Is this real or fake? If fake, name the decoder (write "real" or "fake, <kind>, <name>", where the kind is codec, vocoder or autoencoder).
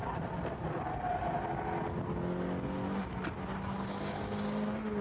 real